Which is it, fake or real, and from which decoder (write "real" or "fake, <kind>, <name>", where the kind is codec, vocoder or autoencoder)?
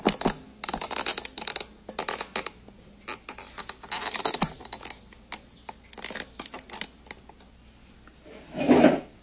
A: real